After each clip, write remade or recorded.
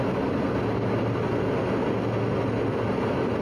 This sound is recorded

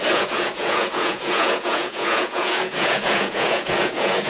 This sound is remade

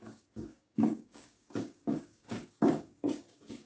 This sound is remade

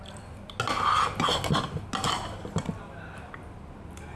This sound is recorded